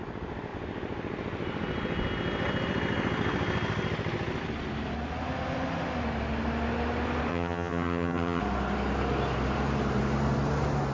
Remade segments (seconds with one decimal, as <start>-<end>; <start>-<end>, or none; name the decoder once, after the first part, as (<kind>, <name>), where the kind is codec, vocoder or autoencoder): 7.3-8.4 (vocoder, HiFi-GAN)